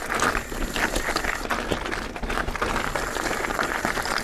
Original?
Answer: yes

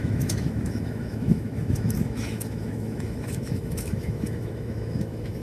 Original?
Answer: no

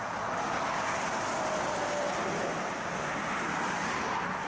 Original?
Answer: yes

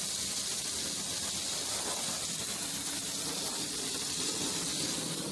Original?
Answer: yes